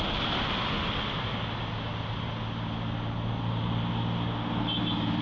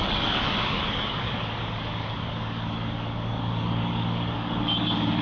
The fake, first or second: second